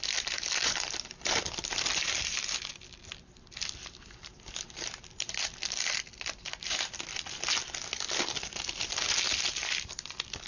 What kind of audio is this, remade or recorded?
remade